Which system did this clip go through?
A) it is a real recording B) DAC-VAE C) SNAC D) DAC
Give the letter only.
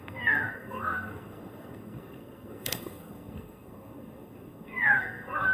C